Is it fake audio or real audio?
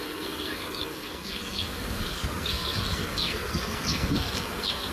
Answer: fake